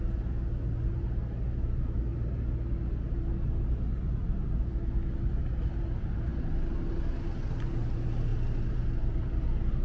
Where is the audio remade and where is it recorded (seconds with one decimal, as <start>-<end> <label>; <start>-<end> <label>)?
0.0-9.8 recorded